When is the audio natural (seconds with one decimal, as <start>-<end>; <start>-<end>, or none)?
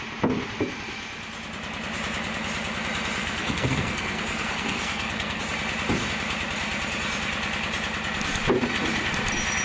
0.0-3.2; 5.4-9.6